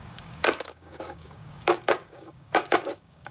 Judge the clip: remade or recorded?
remade